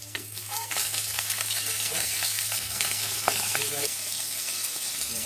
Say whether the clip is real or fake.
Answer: fake